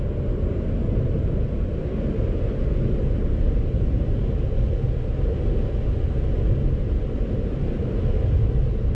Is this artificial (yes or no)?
no